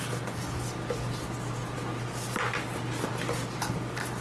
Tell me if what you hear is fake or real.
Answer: real